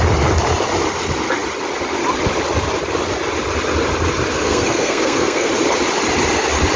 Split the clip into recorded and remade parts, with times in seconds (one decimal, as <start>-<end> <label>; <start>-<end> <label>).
0.0-4.3 recorded; 4.3-5.5 remade; 5.5-6.8 recorded